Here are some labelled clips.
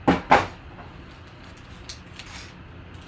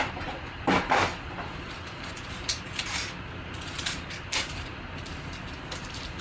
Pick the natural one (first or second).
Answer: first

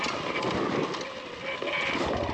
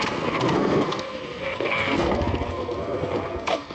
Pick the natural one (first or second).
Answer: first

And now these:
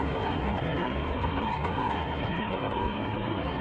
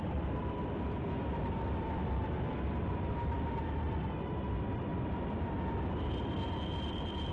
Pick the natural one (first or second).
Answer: second